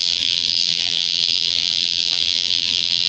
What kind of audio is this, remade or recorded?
remade